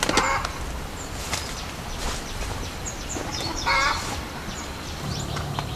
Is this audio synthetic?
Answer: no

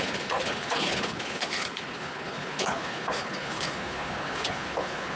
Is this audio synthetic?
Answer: yes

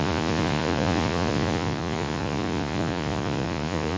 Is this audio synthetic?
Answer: yes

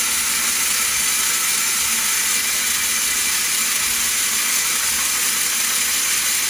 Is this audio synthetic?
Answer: no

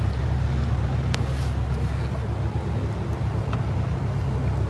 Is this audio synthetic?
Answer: no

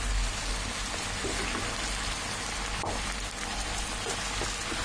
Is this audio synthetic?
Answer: no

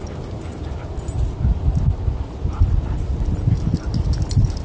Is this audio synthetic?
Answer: no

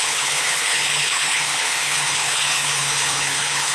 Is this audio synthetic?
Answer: yes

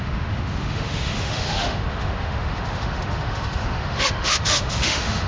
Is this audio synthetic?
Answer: yes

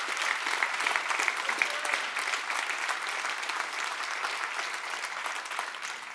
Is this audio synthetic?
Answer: no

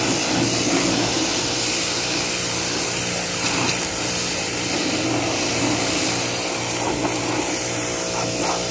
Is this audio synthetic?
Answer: no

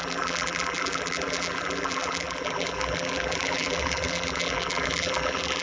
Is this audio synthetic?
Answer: yes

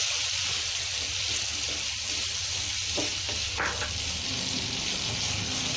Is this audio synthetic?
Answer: no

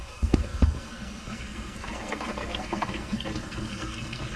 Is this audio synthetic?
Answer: yes